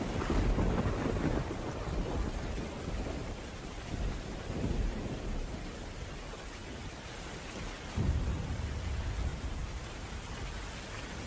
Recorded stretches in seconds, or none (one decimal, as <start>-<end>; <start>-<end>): 0.0-3.2; 5.5-9.3; 10.1-11.3